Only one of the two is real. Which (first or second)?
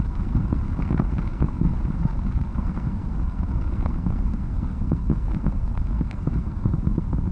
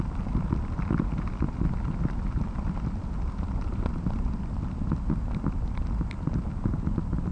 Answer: second